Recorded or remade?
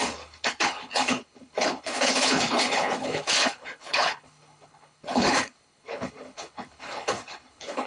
remade